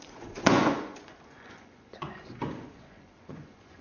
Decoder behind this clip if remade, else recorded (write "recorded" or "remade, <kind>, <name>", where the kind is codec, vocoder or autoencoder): remade, vocoder, Vocos